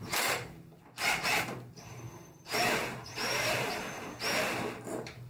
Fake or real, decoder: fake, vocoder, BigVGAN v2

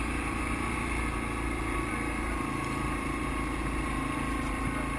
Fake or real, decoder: real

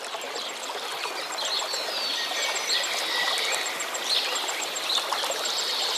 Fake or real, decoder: real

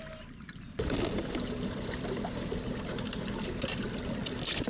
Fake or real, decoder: fake, vocoder, BigVGAN v2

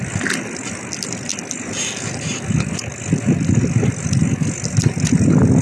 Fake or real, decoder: real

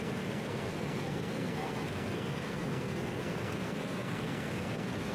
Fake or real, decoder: fake, codec, SNAC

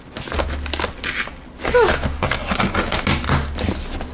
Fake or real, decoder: real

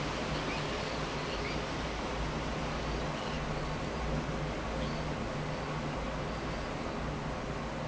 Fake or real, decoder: real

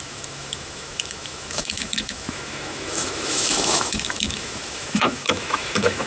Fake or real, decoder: fake, autoencoder, DAC-VAE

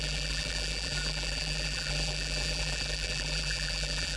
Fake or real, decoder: fake, vocoder, BigVGAN v2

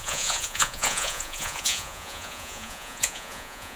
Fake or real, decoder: fake, vocoder, Vocos